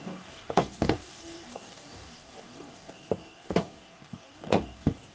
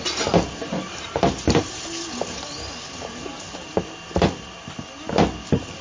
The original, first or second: second